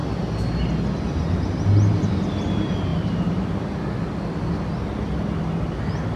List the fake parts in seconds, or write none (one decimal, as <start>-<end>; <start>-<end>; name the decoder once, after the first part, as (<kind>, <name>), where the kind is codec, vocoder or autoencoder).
none